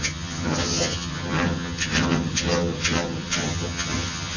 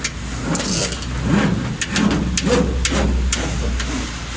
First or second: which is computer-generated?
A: first